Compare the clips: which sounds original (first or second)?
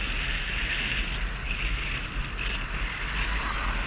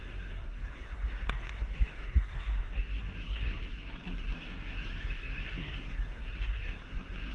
first